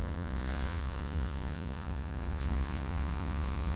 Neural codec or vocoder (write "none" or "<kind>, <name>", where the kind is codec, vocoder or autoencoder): vocoder, Vocos